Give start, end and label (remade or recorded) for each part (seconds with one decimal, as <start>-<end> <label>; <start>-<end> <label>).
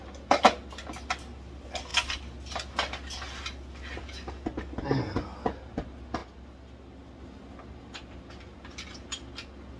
0.0-9.8 recorded